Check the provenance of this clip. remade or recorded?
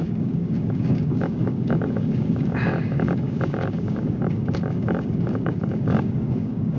remade